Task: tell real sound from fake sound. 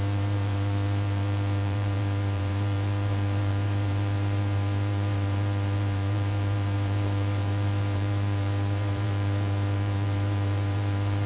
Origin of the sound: fake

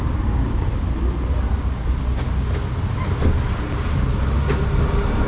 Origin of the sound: real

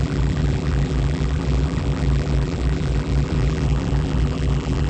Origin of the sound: fake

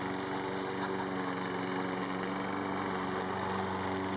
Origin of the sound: real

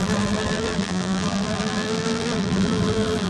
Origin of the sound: fake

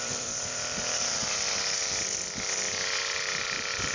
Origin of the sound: fake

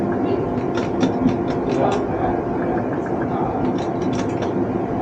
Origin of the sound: real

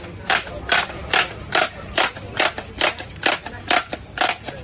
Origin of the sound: fake